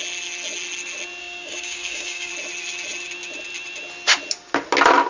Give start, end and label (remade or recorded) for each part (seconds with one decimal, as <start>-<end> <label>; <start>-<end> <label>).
0.0-1.2 recorded; 1.2-2.3 remade; 2.3-5.1 recorded